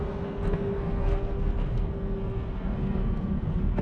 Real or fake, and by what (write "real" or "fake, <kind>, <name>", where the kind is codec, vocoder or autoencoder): fake, codec, SNAC